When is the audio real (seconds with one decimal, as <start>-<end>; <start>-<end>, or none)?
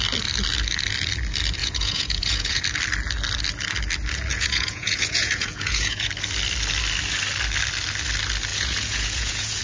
0.0-1.6; 2.6-4.3; 6.1-8.5